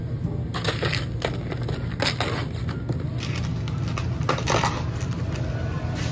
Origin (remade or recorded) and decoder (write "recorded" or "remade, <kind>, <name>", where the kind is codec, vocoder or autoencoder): recorded